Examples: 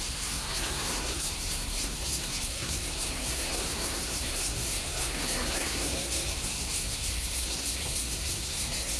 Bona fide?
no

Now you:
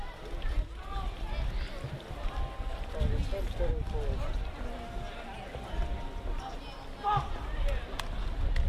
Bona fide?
yes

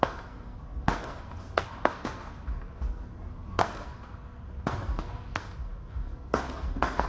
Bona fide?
no